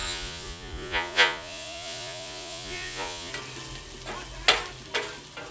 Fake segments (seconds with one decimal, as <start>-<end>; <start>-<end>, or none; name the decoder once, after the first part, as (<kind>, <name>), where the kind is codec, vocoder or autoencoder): 0.0-3.3 (vocoder, Vocos)